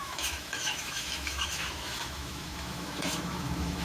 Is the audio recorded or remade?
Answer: remade